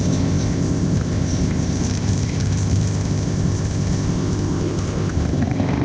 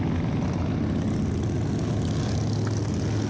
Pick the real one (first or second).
second